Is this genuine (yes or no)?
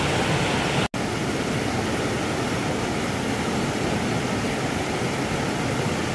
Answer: yes